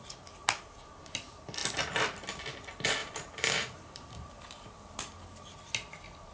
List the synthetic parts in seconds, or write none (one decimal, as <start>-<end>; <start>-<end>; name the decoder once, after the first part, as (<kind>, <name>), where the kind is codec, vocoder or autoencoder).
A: 3.0-5.0 (vocoder, BigVGAN v2)